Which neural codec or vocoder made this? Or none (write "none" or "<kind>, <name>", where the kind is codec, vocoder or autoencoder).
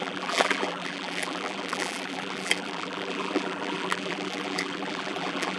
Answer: vocoder, BigVGAN v2